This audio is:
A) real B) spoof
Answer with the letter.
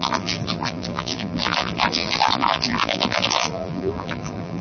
B